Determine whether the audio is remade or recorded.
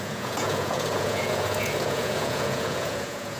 remade